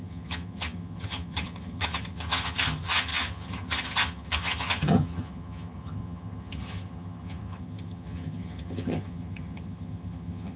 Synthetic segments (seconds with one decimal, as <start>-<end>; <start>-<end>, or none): 0.0-10.6